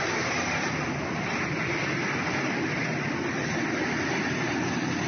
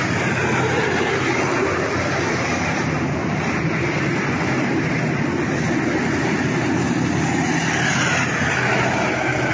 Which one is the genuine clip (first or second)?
second